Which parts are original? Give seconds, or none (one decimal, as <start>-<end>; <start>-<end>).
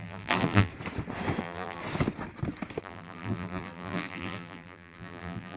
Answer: 0.7-1.4; 1.8-2.8